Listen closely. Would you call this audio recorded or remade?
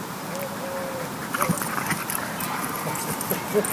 recorded